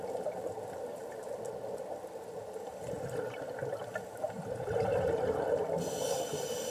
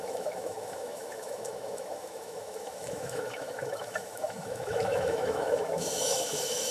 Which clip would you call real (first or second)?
first